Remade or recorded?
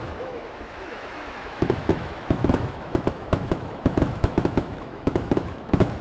remade